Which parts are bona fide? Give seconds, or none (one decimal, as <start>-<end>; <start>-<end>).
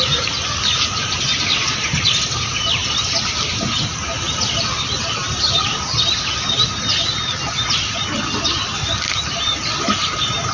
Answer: 0.0-10.5